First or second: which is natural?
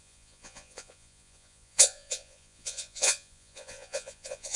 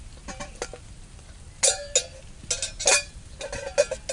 second